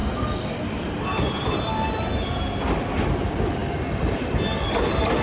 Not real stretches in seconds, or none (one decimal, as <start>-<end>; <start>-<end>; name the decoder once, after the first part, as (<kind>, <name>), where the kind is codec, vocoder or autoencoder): 0.0-5.2 (vocoder, BigVGAN v2)